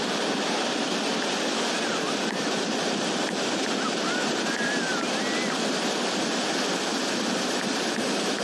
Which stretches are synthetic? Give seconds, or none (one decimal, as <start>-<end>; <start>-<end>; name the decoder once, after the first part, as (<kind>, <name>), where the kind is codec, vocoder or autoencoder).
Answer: 0.0-1.1 (vocoder, BigVGAN v2); 2.4-4.9; 5.7-8.4